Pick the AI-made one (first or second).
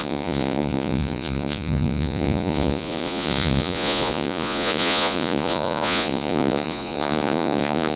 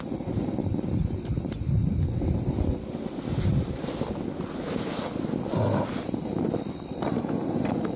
first